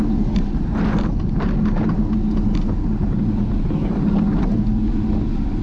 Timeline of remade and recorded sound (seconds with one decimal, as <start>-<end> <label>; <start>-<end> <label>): 0.0-5.6 recorded